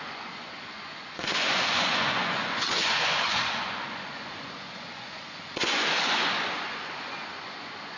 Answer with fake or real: fake